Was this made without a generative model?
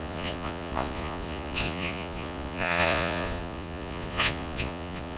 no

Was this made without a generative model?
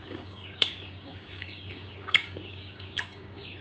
no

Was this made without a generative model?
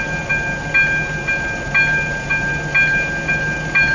yes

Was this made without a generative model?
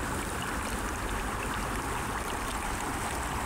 yes